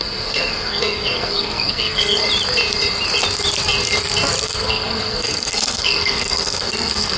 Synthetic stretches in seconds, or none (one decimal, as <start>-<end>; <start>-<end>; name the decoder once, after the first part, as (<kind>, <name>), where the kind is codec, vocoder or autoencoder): 0.0-2.2 (codec, SNAC); 4.4-7.2